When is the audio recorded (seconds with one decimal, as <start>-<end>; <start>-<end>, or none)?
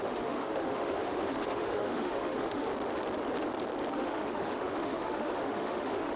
2.7-3.9